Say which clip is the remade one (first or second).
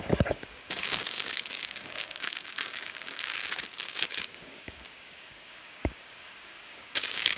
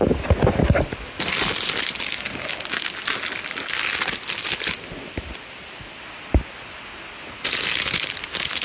first